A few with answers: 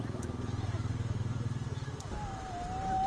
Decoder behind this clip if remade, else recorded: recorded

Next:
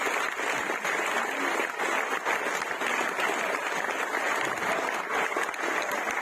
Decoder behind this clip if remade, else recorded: recorded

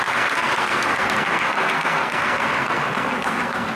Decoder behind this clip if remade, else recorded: remade, codec, SNAC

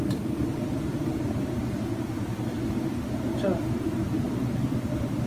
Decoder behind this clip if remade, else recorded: remade, vocoder, BigVGAN v2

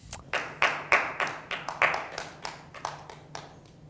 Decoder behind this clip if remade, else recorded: recorded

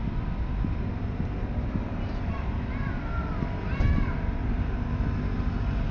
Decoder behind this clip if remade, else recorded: remade, vocoder, BigVGAN v2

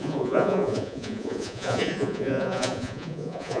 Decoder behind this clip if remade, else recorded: remade, vocoder, Vocos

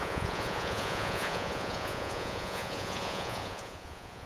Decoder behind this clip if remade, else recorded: remade, vocoder, Vocos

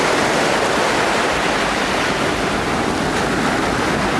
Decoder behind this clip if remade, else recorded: recorded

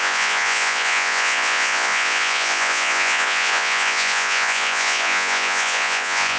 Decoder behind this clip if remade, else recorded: remade, vocoder, Vocos